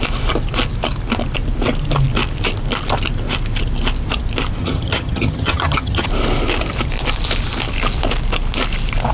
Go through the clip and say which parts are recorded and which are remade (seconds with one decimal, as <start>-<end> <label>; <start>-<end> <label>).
0.0-4.6 recorded; 4.6-6.1 remade; 6.1-9.1 recorded